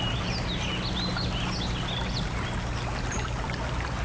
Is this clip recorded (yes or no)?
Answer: yes